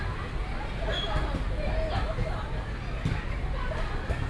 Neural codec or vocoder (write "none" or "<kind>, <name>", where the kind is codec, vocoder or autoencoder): none